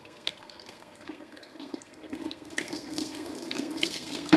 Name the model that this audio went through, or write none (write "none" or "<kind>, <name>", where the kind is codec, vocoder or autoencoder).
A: codec, SNAC